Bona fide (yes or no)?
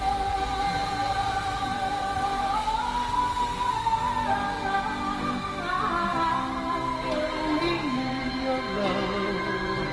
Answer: yes